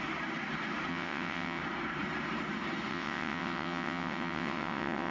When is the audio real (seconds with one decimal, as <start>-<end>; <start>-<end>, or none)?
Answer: 0.0-0.9; 1.6-2.9